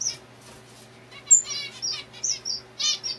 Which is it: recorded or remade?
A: recorded